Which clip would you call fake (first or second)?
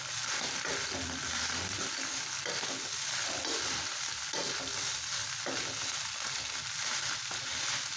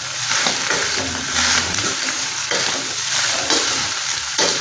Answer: second